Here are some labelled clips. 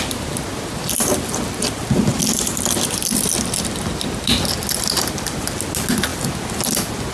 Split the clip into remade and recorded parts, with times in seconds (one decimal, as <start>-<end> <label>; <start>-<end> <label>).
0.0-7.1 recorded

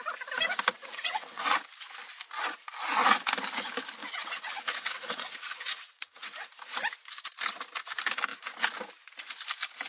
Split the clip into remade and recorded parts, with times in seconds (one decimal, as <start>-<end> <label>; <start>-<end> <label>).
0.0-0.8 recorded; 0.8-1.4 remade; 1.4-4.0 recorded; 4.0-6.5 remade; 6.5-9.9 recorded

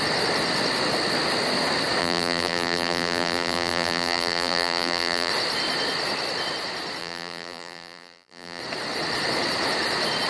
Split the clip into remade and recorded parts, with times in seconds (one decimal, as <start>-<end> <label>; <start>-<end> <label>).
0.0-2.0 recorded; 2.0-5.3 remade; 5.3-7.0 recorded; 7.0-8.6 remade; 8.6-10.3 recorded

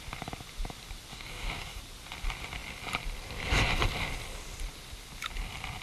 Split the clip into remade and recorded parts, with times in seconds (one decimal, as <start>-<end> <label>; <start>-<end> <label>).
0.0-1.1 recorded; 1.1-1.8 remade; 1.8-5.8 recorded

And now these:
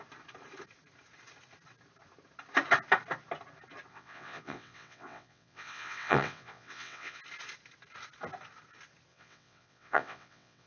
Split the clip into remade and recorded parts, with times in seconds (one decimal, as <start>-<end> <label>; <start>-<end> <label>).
0.0-3.9 recorded; 3.9-7.2 remade; 7.2-9.1 recorded; 9.1-10.7 remade

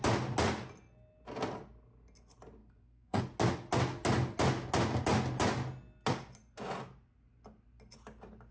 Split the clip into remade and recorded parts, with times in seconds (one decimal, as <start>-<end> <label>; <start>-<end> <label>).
0.0-2.6 recorded; 2.6-3.2 remade; 3.2-8.5 recorded